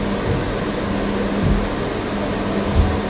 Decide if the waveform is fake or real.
real